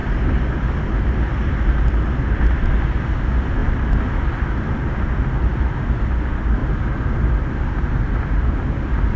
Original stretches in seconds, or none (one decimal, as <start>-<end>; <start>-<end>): 0.0-9.2